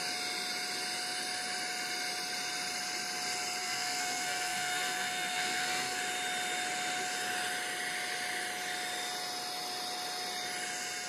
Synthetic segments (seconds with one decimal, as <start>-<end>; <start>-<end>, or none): 3.6-6.0